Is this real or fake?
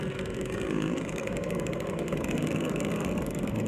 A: fake